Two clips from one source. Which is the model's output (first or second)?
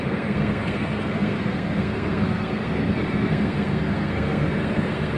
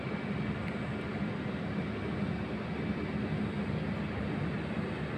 first